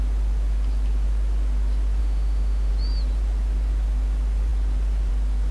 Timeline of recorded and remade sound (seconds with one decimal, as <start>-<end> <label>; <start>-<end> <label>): 0.0-2.0 recorded; 2.0-2.7 remade; 2.7-5.5 recorded